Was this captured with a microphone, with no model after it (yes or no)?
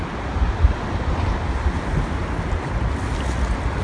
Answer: yes